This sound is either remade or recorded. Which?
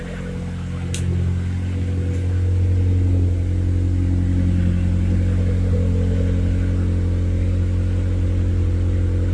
recorded